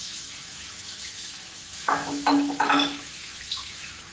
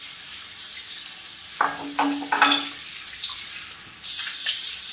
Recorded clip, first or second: second